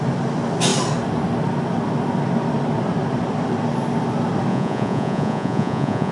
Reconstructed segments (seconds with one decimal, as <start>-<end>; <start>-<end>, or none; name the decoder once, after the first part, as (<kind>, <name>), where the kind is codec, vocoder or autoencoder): 4.5-6.1 (vocoder, Vocos)

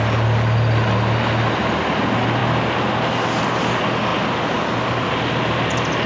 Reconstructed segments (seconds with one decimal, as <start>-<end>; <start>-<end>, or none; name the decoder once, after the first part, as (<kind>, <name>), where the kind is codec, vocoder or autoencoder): none

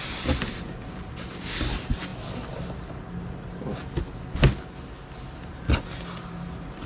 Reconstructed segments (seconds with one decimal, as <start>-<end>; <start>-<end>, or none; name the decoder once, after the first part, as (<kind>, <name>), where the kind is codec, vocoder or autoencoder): none